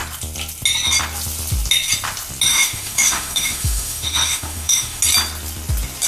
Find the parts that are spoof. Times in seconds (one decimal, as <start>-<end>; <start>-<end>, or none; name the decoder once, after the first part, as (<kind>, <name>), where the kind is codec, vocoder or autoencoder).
2.5-5.0 (autoencoder, DAC-VAE)